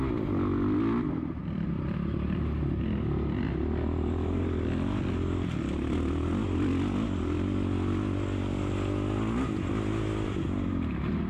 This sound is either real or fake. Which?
real